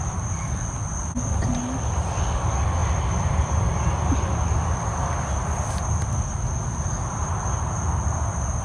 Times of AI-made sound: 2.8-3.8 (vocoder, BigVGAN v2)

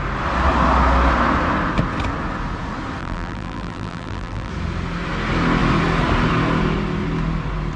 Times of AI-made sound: 3.0-4.5 (vocoder, BigVGAN v2)

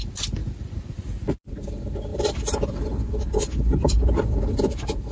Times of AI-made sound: 0.4-1.5 (vocoder, BigVGAN v2); 2.1-4.3